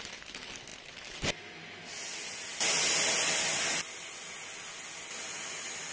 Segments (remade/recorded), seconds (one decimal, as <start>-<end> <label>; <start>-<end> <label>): 0.0-5.9 recorded